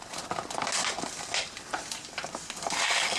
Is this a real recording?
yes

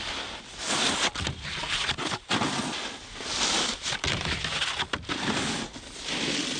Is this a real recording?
yes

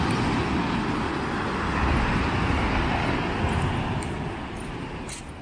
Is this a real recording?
yes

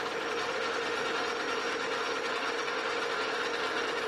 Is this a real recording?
yes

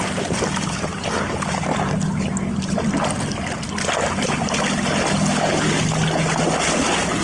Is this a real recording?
yes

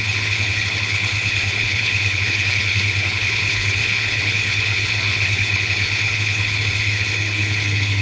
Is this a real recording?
no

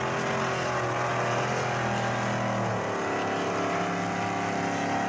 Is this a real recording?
yes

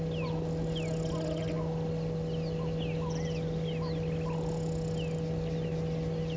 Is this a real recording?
yes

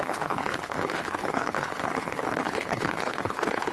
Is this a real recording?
no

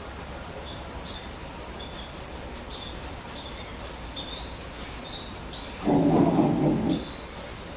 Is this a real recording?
yes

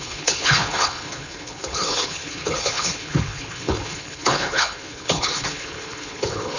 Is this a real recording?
no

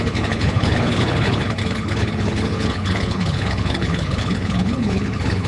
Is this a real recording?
no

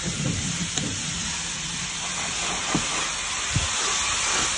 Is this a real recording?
yes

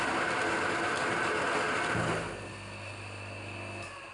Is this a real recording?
yes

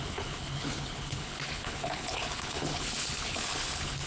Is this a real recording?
no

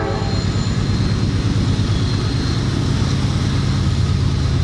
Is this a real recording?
yes